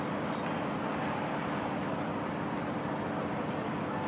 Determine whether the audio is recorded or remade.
recorded